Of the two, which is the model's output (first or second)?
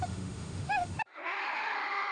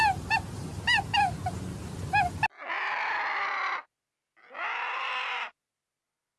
first